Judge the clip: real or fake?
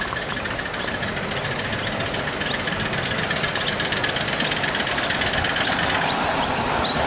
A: real